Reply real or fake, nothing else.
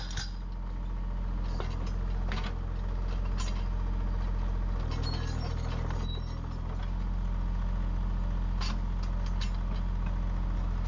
real